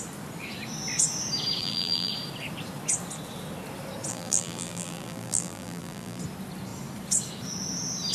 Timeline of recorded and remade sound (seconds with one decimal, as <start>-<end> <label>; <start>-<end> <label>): 0.0-1.6 recorded; 1.6-2.1 remade; 2.1-4.1 recorded; 4.1-6.2 remade; 6.2-8.1 recorded